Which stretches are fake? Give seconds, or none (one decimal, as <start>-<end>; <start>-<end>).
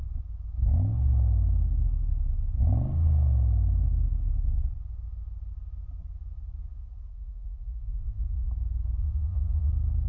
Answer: 7.1-8.5; 9.0-9.7